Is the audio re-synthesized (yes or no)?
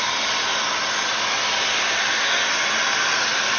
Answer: no